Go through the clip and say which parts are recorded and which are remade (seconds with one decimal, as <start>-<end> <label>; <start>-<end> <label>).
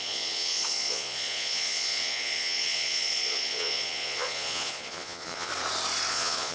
0.0-5.5 remade; 5.5-6.1 recorded; 6.1-6.5 remade